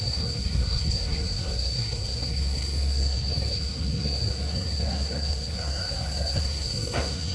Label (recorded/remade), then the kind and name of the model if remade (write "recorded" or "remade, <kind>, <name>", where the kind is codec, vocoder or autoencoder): remade, codec, SNAC